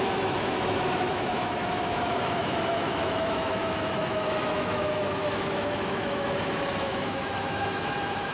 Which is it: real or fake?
fake